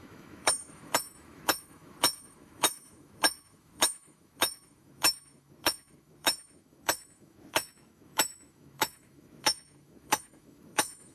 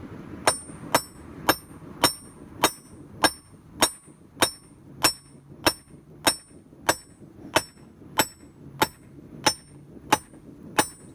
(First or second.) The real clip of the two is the second